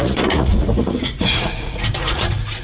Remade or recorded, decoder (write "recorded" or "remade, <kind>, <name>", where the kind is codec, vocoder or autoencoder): remade, vocoder, Vocos